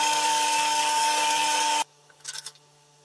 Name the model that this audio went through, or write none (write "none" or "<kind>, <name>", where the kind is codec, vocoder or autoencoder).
codec, DAC